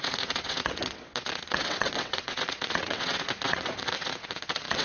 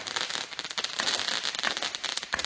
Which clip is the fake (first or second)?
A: first